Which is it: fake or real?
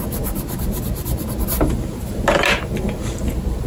real